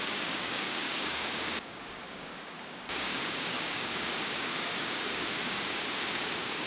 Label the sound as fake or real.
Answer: fake